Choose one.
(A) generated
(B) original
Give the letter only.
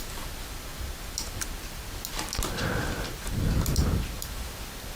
B